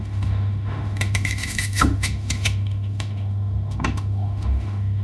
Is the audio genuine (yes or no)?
no